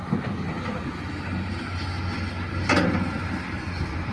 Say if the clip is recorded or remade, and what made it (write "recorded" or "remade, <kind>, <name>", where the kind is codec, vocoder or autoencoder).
recorded